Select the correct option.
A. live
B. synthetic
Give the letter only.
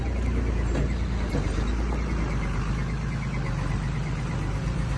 A